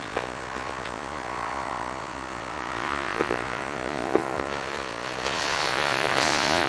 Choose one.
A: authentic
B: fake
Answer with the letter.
B